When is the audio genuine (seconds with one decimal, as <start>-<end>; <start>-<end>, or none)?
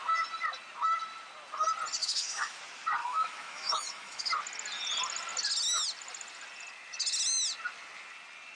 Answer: 0.0-2.0; 2.6-3.0; 4.3-8.6